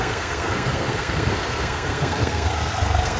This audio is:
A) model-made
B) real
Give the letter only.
A